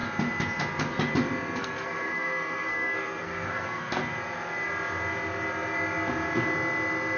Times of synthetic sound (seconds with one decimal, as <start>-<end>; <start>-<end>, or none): 1.6-3.9